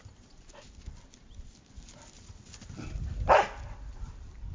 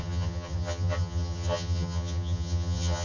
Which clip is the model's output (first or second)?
second